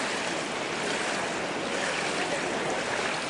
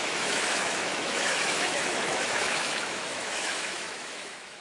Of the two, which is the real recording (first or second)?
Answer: first